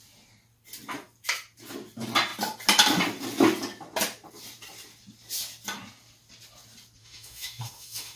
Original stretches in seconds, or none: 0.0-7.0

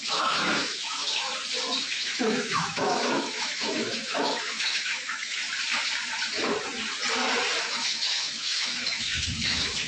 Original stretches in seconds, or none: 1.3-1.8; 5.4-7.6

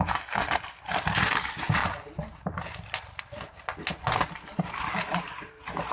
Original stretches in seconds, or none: 0.0-5.9

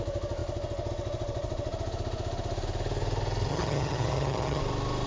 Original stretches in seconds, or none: 0.0-3.5; 4.6-5.1

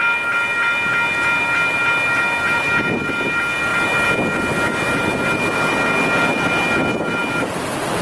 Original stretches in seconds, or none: 0.0-8.0

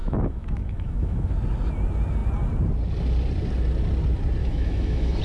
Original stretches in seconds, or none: 1.3-4.4

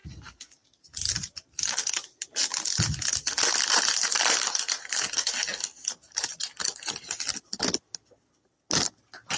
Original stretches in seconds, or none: 0.0-9.4

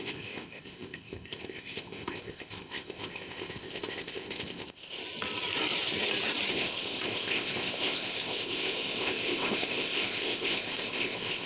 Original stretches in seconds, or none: 5.0-6.5